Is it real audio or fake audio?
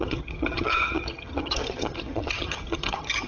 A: fake